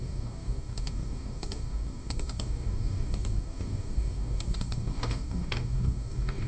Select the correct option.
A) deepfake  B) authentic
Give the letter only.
A